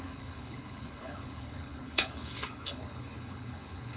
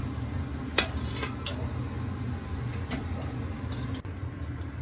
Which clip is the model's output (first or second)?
first